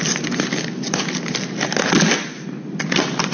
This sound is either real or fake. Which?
real